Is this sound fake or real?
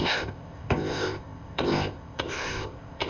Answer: fake